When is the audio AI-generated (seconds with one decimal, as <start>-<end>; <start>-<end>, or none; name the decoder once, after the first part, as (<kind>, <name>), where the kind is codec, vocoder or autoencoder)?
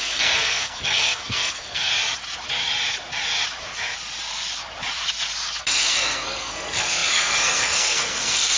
0.0-1.9 (codec, SNAC); 5.6-8.6